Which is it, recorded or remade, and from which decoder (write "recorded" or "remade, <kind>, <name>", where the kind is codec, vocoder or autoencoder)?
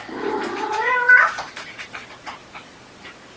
recorded